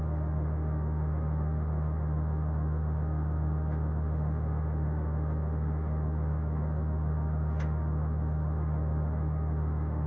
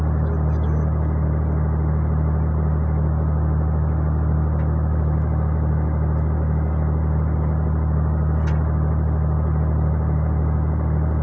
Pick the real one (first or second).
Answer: second